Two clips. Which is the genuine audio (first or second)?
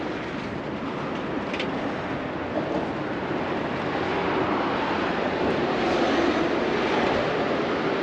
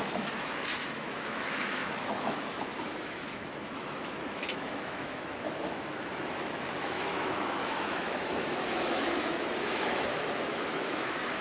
first